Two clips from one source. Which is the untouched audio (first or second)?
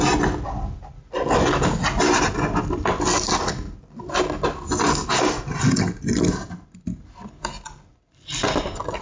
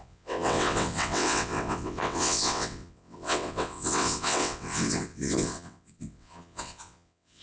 first